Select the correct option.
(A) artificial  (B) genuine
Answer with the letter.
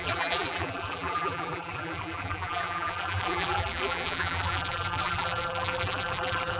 A